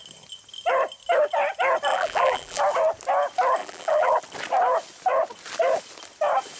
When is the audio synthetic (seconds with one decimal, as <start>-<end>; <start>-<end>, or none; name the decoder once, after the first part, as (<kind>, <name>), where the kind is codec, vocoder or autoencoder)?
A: 1.9-2.6 (vocoder, BigVGAN v2); 3.6-4.2